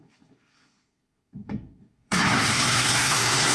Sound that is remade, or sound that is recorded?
remade